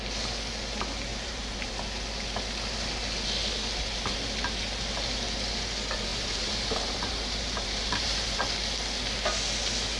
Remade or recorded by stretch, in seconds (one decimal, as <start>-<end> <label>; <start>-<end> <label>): 0.0-1.1 recorded; 1.1-1.8 remade; 1.8-6.1 recorded; 6.1-8.4 remade; 8.4-10.0 recorded